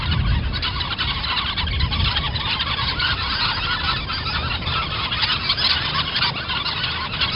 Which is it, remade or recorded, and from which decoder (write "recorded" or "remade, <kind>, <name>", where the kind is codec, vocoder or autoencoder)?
recorded